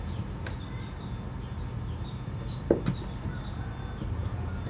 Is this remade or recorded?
recorded